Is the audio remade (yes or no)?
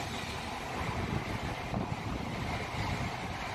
no